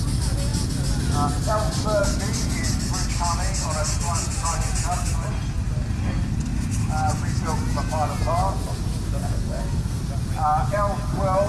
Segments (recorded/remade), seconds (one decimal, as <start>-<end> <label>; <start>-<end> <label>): 0.0-9.2 recorded; 9.2-10.0 remade; 10.0-11.5 recorded